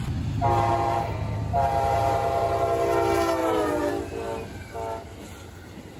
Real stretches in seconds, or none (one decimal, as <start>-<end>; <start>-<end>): 0.0-3.4; 3.9-6.0